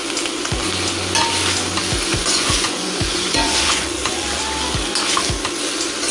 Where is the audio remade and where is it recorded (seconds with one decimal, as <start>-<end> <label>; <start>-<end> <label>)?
0.0-2.1 recorded; 2.1-4.4 remade; 4.4-6.1 recorded